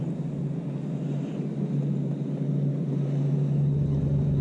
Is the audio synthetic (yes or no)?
no